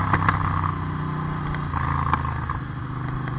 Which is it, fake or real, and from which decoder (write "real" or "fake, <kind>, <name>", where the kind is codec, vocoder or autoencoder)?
real